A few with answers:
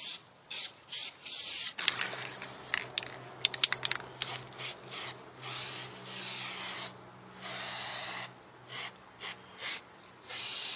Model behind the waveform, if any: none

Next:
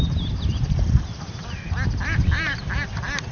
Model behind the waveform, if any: none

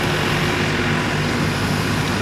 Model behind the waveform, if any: none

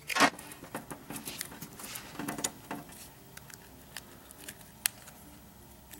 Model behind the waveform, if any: none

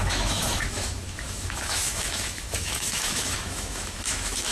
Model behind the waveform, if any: autoencoder, DAC-VAE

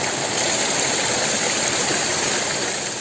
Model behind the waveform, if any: none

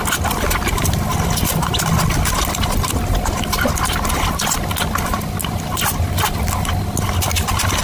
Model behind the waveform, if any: none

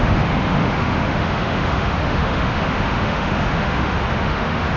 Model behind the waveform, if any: autoencoder, DAC-VAE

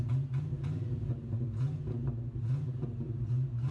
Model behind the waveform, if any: none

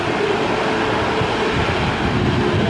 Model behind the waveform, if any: none